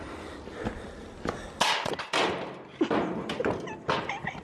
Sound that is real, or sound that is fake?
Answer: real